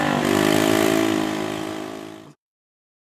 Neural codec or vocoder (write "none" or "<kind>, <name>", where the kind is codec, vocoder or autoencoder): none